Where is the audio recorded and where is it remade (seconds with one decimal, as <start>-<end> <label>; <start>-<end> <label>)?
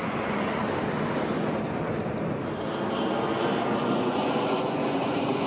0.0-0.6 remade; 0.6-3.8 recorded; 3.8-5.5 remade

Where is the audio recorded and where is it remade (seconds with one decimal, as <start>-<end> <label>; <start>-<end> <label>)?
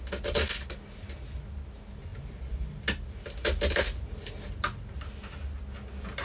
0.0-6.2 recorded